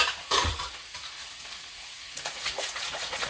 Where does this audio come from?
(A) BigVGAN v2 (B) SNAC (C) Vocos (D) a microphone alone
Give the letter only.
C